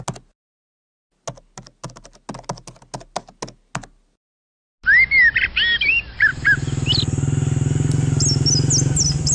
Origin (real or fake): real